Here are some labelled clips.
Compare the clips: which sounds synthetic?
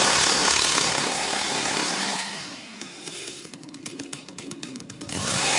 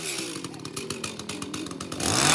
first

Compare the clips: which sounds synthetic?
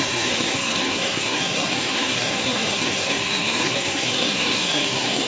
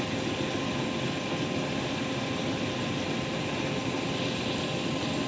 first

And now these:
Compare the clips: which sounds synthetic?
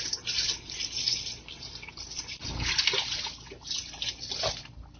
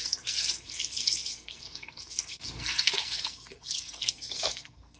second